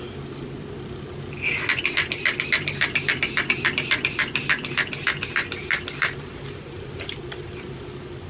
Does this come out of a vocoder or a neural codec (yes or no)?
no